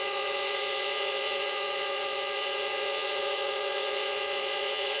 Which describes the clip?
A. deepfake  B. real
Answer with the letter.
A